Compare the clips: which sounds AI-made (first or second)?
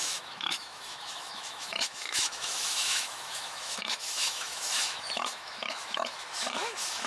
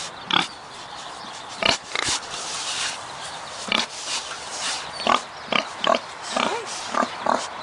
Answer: first